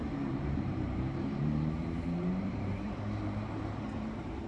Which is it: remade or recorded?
remade